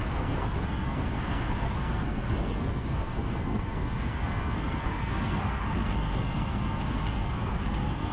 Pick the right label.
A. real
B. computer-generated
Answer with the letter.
B